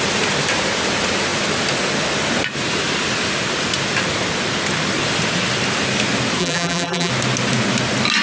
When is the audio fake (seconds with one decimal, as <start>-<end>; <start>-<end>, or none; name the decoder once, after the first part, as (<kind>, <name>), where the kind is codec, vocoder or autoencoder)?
6.4-7.1 (vocoder, BigVGAN v2)